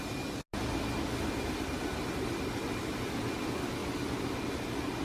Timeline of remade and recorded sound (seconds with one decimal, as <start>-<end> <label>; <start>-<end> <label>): 0.0-5.0 recorded